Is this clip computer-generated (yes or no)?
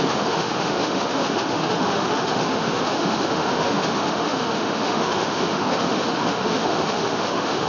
yes